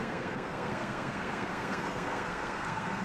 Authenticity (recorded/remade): remade